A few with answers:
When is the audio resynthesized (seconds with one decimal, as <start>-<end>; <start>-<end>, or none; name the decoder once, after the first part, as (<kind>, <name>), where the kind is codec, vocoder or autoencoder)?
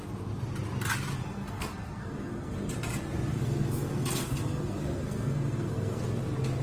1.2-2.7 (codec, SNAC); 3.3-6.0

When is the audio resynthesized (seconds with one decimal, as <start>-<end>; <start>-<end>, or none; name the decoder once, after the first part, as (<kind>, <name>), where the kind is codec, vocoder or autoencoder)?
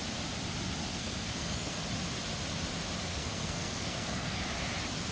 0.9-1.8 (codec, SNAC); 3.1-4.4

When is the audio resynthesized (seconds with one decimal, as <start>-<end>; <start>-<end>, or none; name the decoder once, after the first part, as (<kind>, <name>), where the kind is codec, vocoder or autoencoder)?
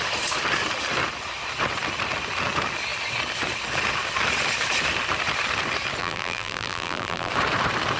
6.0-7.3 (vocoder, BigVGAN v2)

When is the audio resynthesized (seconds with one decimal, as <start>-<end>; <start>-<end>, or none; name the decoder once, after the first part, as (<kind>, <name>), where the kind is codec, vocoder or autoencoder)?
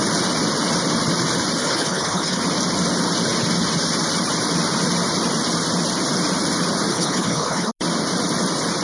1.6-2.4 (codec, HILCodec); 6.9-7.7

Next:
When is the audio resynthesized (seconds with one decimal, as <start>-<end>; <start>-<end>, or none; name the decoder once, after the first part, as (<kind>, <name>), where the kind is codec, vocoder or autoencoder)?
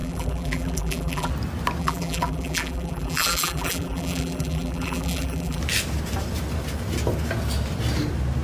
0.0-1.3 (vocoder, BigVGAN v2); 1.8-5.6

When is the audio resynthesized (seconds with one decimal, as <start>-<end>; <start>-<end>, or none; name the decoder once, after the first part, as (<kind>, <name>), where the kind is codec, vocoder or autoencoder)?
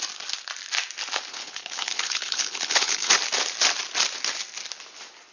1.3-3.1 (codec, HILCodec)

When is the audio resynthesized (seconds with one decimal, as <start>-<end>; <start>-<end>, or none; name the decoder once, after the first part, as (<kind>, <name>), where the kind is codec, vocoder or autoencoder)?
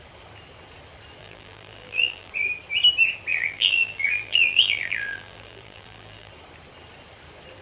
1.2-2.3 (vocoder, BigVGAN v2); 3.3-6.3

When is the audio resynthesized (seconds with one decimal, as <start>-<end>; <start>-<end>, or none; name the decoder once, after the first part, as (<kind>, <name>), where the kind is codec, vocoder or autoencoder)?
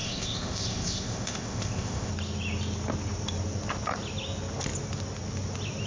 0.0-2.1 (codec, ZipCodec)